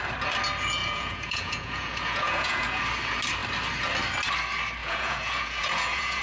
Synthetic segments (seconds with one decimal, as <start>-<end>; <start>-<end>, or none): 0.8-2.8; 4.8-6.2